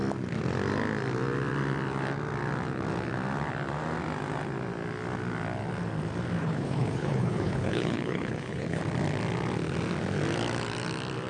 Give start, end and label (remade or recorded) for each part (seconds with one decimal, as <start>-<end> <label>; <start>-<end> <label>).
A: 0.0-6.4 recorded; 6.4-8.8 remade; 8.8-11.3 recorded